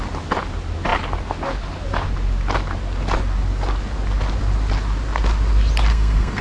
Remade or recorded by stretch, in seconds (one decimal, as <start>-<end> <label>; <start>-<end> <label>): 0.0-5.9 recorded; 5.9-6.4 remade